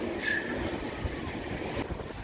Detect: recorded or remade recorded